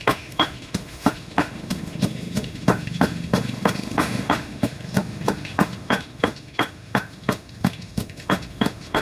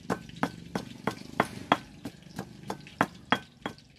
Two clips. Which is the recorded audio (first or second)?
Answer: second